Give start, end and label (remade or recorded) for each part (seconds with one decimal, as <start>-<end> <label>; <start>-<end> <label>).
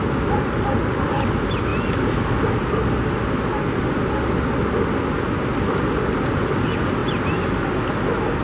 0.0-8.4 recorded